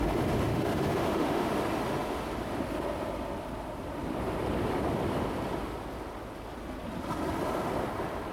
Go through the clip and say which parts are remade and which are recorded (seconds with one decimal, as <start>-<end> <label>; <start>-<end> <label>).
0.0-0.5 recorded; 0.5-1.5 remade; 1.5-8.3 recorded